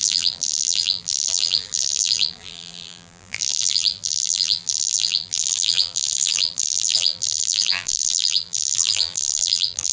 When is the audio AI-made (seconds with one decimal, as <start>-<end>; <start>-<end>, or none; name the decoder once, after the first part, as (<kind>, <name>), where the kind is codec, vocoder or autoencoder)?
0.0-9.9 (vocoder, BigVGAN v2)